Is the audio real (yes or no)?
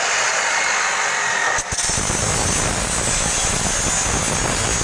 yes